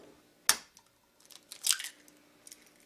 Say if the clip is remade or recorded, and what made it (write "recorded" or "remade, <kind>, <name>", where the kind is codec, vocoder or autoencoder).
recorded